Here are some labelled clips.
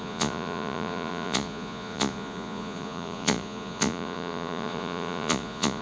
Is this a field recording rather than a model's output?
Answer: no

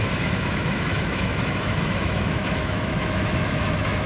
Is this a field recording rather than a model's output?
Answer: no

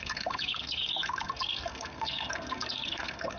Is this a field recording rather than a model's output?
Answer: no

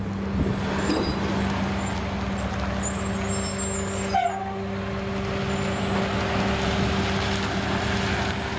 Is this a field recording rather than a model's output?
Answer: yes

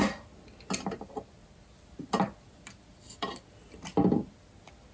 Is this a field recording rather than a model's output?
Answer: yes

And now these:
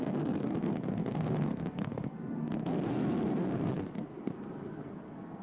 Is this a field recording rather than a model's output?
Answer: no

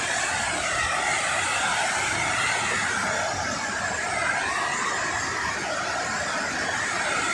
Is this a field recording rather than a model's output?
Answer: yes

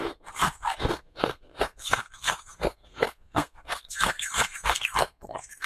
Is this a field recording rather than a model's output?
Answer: no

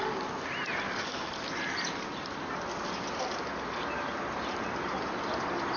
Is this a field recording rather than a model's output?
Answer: yes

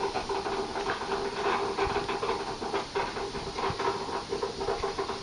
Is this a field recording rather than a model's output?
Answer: yes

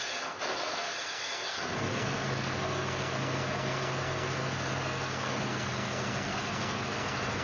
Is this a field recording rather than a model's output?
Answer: no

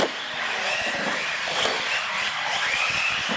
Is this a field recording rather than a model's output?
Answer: yes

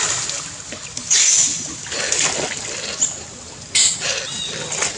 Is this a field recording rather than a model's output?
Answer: yes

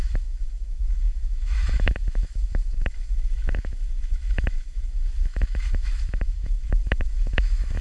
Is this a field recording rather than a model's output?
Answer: no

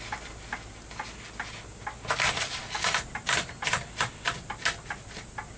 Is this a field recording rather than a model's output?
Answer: yes